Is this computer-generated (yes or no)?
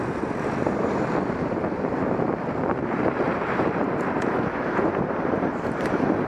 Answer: yes